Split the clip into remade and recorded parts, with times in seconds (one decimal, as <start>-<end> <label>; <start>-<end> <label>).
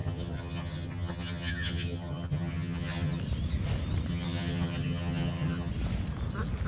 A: 0.0-3.2 remade; 3.2-4.1 recorded; 4.1-5.7 remade; 5.7-6.7 recorded